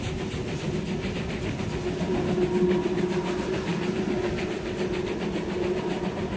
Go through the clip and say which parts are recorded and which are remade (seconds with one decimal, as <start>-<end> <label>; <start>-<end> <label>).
0.0-6.4 recorded